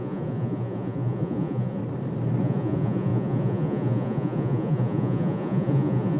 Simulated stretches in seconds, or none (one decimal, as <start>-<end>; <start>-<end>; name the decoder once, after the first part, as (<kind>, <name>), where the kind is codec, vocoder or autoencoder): 0.0-1.8 (vocoder, Vocos); 2.4-6.2